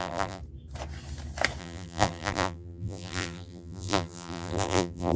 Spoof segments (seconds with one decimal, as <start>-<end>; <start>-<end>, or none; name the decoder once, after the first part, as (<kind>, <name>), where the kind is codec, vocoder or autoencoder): 0.0-0.4 (vocoder, BigVGAN v2); 1.6-5.2